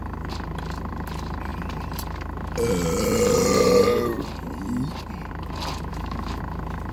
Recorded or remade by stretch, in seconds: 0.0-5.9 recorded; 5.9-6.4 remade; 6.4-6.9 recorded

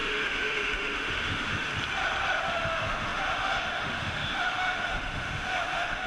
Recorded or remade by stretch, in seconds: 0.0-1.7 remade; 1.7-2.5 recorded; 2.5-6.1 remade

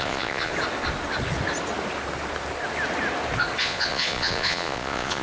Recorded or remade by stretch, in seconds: 0.0-0.5 remade; 0.5-3.6 recorded; 3.6-5.2 remade

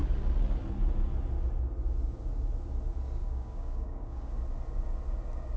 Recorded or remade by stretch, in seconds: 0.0-3.2 recorded; 3.2-4.3 remade; 4.3-5.6 recorded

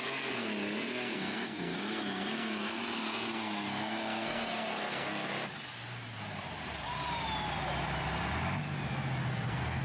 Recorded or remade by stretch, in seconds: 0.0-5.3 remade; 5.3-9.3 recorded; 9.3-9.8 remade

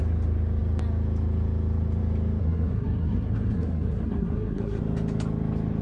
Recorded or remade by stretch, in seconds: 0.0-2.4 recorded; 2.4-4.8 remade; 4.8-5.8 recorded

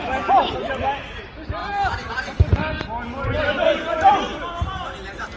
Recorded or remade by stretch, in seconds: 0.0-2.6 remade; 2.6-3.4 recorded; 3.4-4.3 remade; 4.3-5.4 recorded

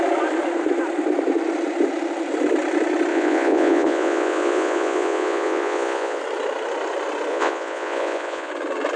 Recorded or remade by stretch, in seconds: 0.0-3.1 recorded; 3.1-6.2 remade; 6.2-7.3 recorded; 7.3-8.5 remade; 8.5-9.0 recorded